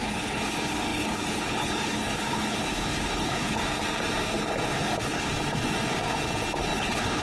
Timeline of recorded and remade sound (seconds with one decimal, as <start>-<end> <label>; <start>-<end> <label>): 0.0-3.6 remade; 3.6-4.7 recorded; 4.7-5.3 remade; 5.3-6.6 recorded; 6.6-7.2 remade